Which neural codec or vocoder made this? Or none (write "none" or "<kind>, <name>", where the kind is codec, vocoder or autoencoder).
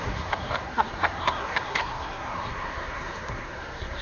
codec, SNAC